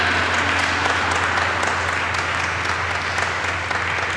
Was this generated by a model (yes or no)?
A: no